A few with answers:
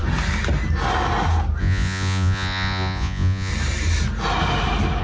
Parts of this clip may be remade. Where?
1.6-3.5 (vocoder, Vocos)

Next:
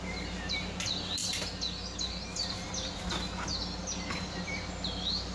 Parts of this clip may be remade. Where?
none

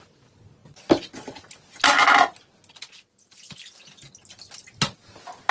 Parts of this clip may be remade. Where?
none

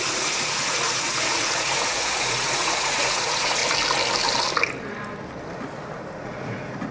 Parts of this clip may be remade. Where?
0.0-3.6 (vocoder, Vocos); 6.1-6.9

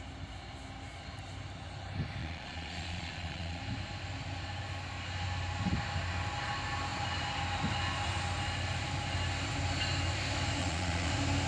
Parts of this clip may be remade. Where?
2.2-3.6 (vocoder, Vocos); 10.6-11.1